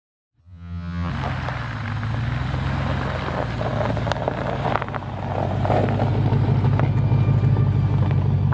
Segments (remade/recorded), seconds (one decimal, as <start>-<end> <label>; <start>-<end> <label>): 0.0-0.4 recorded; 0.4-1.1 remade; 1.1-8.5 recorded